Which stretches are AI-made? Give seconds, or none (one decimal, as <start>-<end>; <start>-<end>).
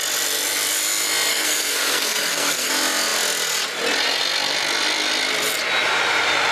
1.3-2.7